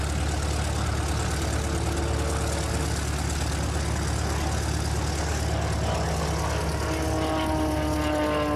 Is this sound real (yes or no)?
yes